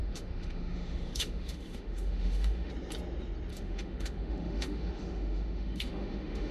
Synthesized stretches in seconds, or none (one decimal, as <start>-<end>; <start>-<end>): 0.0-2.7; 3.5-6.5